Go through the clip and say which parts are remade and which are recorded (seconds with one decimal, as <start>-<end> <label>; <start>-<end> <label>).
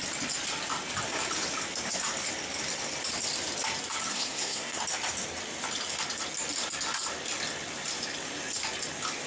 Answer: 0.0-4.1 recorded; 4.1-4.8 remade; 4.8-9.3 recorded